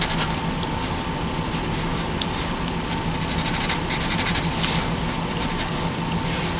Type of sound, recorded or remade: recorded